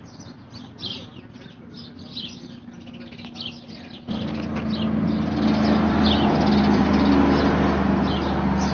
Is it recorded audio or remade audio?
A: recorded